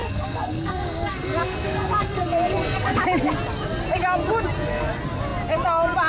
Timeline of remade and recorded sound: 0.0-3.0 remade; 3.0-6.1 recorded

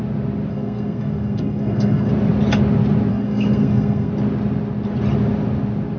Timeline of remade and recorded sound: 0.0-0.5 recorded; 0.5-2.1 remade; 2.1-3.1 recorded; 3.1-4.1 remade; 4.1-6.0 recorded

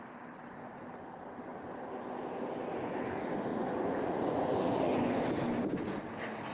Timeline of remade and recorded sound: 0.0-3.5 recorded; 3.5-5.2 remade; 5.2-6.5 recorded

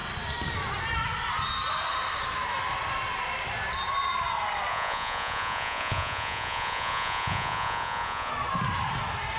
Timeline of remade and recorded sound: 0.0-4.7 recorded; 4.7-8.3 remade; 8.3-9.4 recorded

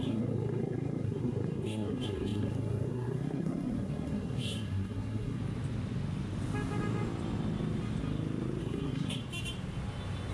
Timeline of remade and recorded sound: 0.0-5.4 remade; 5.4-8.6 recorded; 8.6-9.2 remade; 9.2-10.3 recorded

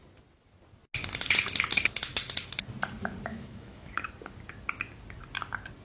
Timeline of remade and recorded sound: 0.0-3.3 recorded; 3.3-4.1 remade; 4.1-5.8 recorded

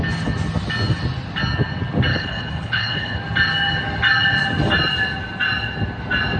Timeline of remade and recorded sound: 0.0-2.1 recorded; 2.1-3.2 remade; 3.2-6.4 recorded

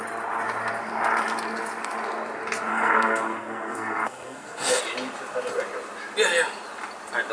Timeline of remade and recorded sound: 0.0-2.7 recorded; 2.7-4.8 remade; 4.8-7.3 recorded